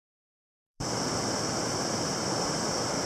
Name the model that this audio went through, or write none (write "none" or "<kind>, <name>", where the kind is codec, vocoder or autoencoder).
vocoder, BigVGAN v2